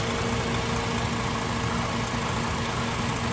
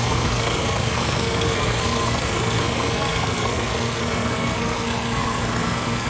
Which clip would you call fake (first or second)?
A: second